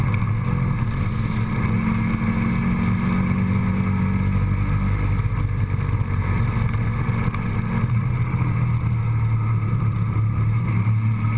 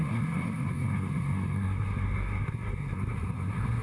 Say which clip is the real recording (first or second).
first